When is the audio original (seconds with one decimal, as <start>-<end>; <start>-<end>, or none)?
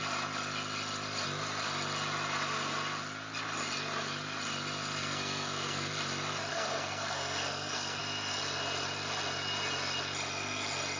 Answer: 0.0-5.0; 5.9-6.5; 8.0-11.0